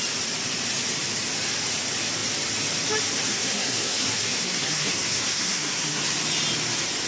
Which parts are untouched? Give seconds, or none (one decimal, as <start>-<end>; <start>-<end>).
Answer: 0.0-3.3; 6.0-7.1